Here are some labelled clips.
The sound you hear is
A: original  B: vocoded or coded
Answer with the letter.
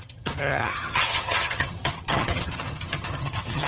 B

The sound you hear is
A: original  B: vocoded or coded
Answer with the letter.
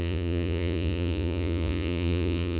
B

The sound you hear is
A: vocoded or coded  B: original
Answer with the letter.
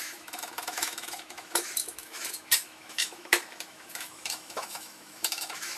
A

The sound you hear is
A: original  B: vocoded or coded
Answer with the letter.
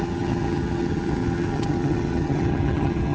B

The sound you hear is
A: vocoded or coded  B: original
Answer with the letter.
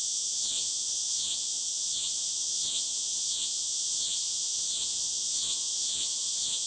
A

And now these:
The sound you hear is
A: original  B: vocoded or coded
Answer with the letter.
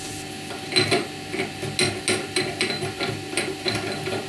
A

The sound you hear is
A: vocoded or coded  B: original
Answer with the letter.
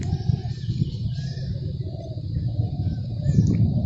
B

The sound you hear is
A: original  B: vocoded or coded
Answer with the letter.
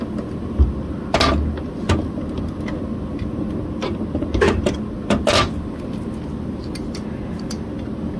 A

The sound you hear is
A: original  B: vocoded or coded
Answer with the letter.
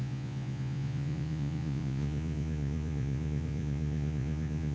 B